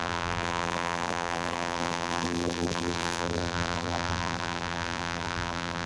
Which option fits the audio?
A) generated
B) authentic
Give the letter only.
A